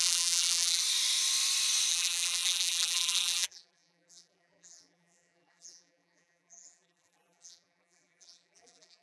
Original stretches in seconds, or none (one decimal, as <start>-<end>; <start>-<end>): 0.8-1.9